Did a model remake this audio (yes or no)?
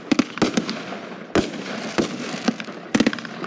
no